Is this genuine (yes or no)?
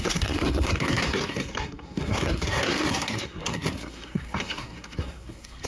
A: no